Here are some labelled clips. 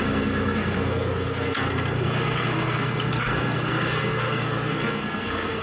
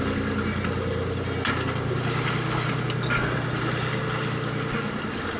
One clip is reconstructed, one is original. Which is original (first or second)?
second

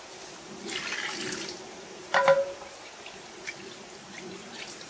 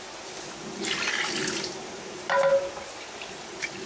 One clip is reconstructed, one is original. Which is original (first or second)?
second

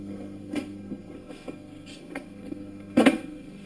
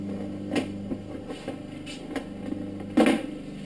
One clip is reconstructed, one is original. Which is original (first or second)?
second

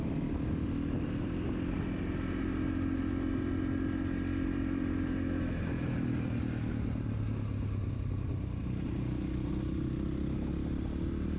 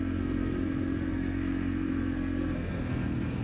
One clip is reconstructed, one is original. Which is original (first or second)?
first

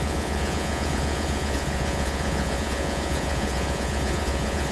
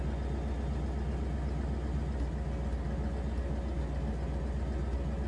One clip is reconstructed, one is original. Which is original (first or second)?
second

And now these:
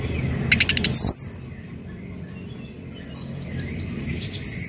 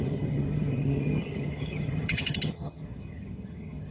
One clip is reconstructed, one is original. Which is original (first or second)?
first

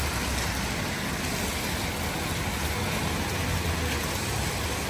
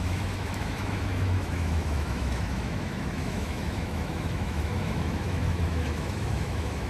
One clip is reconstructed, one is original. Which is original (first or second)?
first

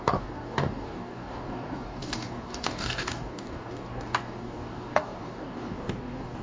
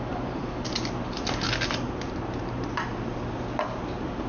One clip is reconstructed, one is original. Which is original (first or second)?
second